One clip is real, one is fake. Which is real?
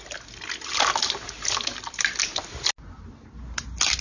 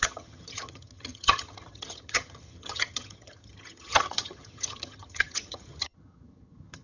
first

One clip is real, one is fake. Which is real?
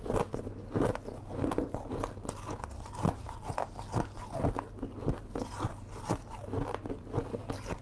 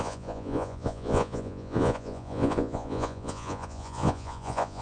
first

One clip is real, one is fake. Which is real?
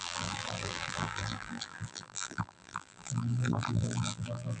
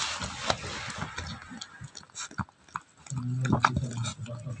second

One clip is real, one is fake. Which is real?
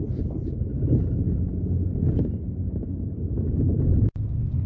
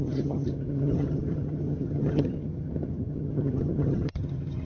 first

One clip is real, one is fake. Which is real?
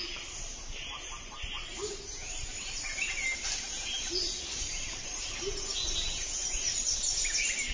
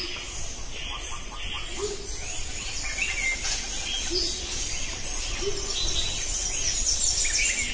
second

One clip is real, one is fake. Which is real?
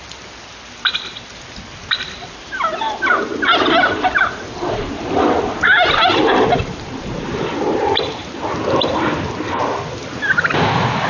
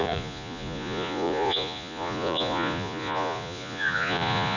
first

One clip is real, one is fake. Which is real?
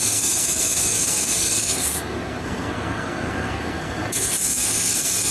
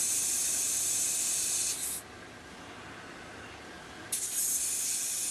second